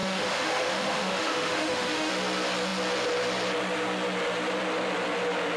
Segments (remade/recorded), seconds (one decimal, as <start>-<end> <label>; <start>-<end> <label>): 0.0-2.1 remade; 2.1-5.6 recorded